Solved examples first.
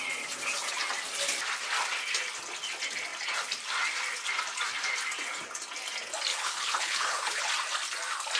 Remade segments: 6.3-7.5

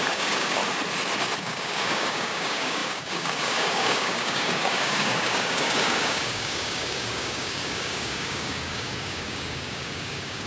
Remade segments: 0.0-0.6; 1.4-10.5

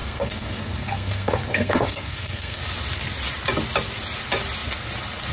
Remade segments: 0.0-2.6